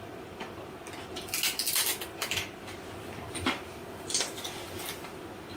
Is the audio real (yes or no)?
yes